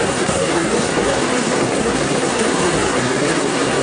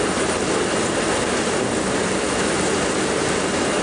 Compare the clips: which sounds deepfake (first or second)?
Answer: first